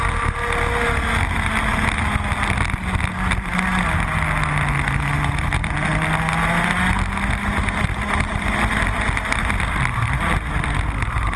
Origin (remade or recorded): recorded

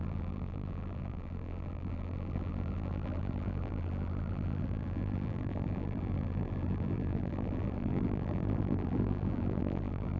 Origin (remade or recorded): remade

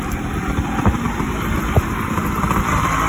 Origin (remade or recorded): remade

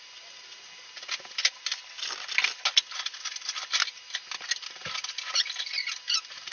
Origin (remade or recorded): recorded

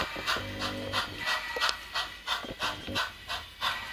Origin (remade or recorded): recorded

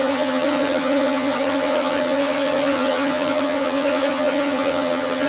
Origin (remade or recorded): remade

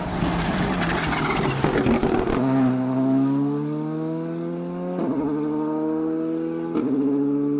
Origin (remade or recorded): recorded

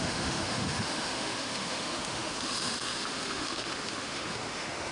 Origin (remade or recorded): remade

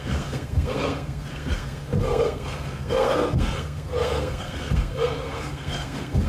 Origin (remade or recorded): remade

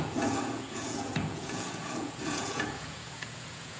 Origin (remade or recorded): remade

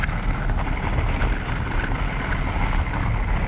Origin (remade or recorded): recorded